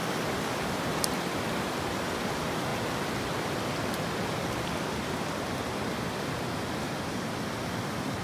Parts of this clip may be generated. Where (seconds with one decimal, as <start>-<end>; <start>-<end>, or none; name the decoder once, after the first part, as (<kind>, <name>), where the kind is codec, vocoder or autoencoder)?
0.0-8.2 (vocoder, BigVGAN v2)